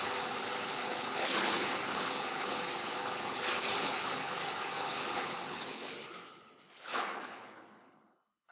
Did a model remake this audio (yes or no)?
yes